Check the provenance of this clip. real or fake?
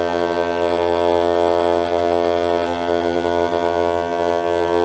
fake